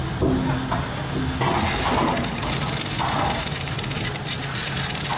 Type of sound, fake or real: real